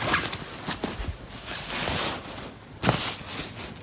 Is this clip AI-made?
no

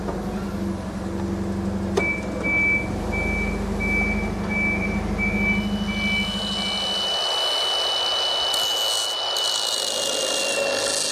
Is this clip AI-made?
no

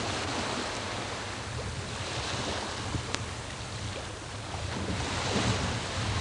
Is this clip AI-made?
no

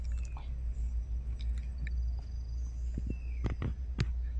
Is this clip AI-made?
no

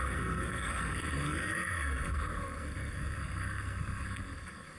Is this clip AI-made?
yes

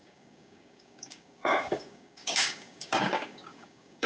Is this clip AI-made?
yes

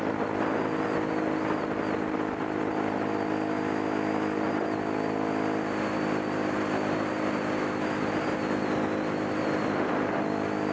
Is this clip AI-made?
no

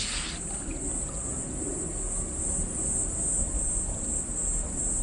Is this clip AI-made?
no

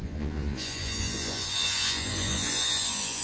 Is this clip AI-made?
yes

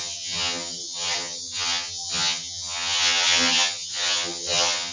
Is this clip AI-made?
yes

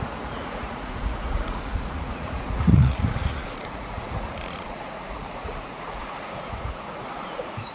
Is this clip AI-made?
yes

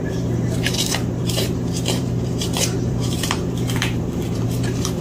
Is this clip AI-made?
yes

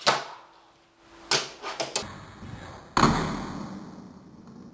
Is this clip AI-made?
no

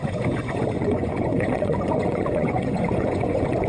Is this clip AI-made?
yes